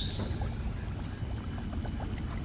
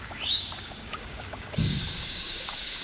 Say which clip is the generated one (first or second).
second